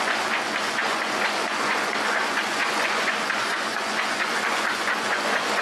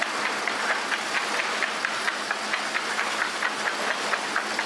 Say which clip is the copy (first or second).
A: first